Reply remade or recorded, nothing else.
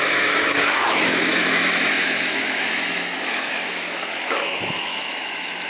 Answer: remade